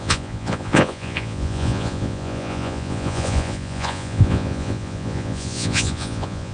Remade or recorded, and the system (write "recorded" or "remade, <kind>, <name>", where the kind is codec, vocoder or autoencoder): remade, vocoder, Vocos